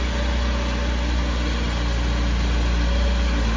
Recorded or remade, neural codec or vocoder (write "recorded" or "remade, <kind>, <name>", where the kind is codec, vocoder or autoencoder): recorded